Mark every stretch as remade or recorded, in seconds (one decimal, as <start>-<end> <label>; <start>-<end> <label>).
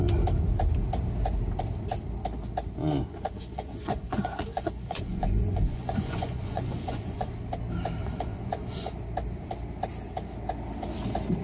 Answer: 0.0-3.0 recorded; 3.0-7.3 remade; 7.3-8.0 recorded; 8.0-8.9 remade; 8.9-11.4 recorded